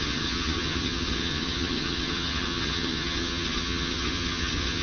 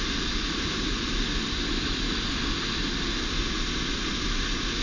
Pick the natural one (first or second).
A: second